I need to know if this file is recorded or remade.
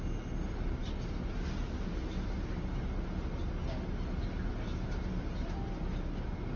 recorded